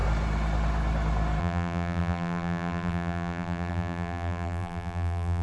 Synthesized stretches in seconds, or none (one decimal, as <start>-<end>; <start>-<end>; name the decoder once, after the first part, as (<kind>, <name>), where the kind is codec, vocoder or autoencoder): 1.4-5.4 (vocoder, BigVGAN v2)